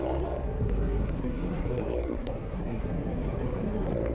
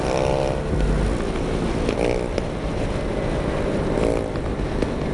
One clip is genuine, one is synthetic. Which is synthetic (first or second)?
first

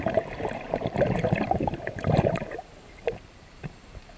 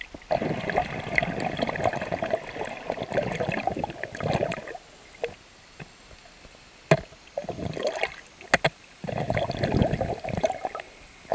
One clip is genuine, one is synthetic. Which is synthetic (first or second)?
first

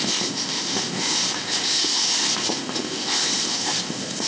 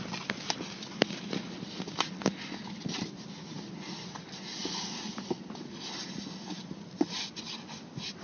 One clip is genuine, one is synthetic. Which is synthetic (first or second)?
first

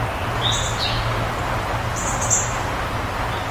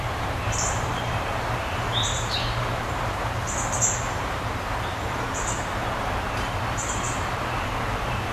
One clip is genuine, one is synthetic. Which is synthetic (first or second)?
second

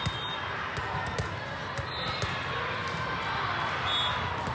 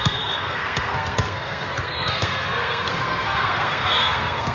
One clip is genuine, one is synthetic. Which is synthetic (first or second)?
second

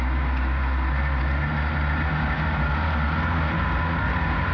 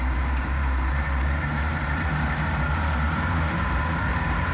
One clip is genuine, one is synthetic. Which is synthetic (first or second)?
second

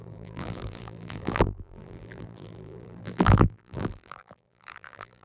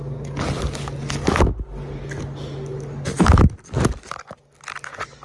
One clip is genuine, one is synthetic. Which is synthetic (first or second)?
first